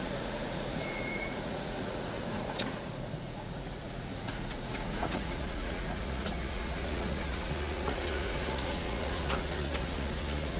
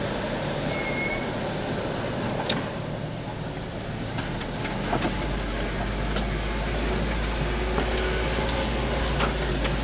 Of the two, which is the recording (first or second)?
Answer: second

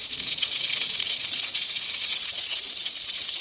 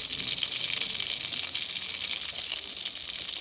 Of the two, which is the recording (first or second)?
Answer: second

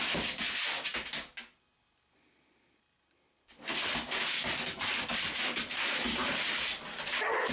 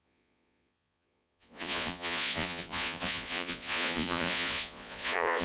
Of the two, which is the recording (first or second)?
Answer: first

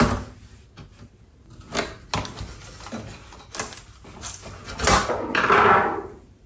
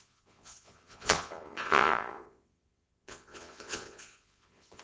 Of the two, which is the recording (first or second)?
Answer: first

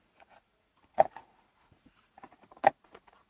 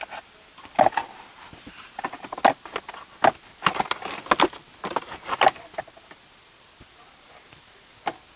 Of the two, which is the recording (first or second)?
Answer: second